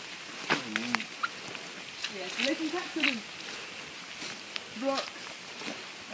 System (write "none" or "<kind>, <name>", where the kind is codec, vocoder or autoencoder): none